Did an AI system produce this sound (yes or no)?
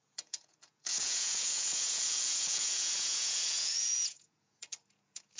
yes